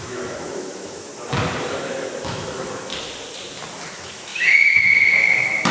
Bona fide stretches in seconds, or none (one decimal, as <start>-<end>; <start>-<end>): 1.1-1.7; 2.9-3.9